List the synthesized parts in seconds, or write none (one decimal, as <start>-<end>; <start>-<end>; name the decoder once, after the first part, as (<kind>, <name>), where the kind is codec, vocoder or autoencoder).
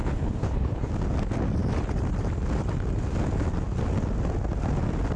0.0-0.9 (codec, HILCodec)